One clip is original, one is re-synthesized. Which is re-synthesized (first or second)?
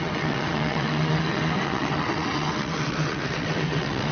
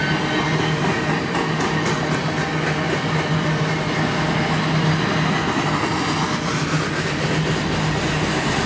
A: first